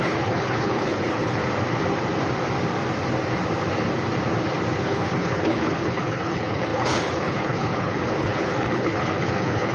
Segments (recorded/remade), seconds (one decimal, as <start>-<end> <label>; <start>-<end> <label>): 0.0-1.4 remade; 1.4-4.8 recorded; 4.8-9.7 remade